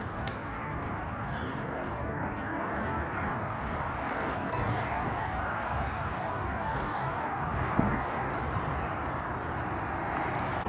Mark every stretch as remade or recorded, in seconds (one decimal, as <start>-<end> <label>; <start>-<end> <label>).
0.0-8.3 remade; 8.3-10.7 recorded